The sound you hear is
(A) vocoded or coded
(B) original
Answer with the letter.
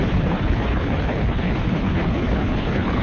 A